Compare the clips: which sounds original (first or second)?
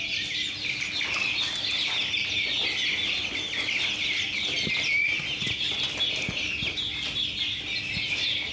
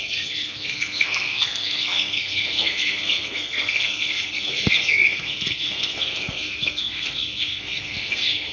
first